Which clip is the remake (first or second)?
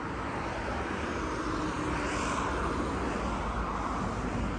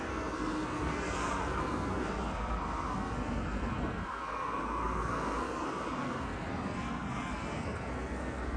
second